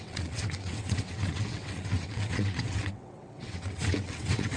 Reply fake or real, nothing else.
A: fake